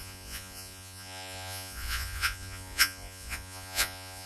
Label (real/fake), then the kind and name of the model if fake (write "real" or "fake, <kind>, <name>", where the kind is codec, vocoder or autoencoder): fake, vocoder, Vocos